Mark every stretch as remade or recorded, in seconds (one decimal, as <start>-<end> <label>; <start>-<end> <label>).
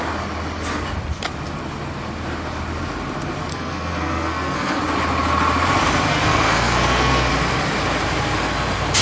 0.0-3.5 recorded; 3.5-4.8 remade; 4.8-6.1 recorded; 6.1-7.3 remade; 7.3-9.0 recorded